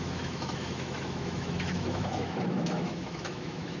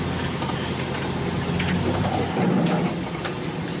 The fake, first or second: first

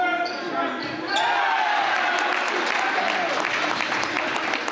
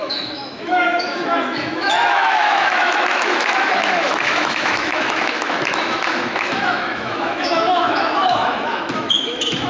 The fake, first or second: second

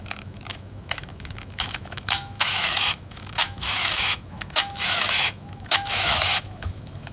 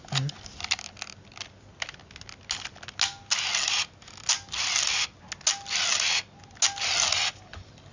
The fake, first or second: first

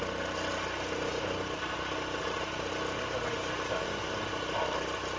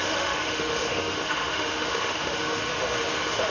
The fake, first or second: second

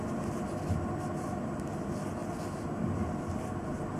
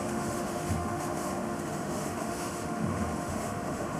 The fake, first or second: second